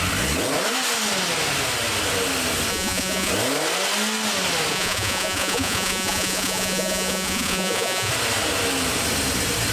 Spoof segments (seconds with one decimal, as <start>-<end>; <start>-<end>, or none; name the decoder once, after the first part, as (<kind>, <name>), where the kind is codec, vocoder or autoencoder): 2.7-3.3 (vocoder, Vocos); 4.7-8.1